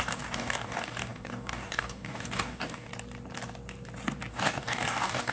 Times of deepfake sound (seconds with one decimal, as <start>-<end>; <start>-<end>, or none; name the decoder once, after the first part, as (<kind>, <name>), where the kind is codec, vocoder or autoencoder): 0.0-2.9 (codec, DAC); 4.3-5.3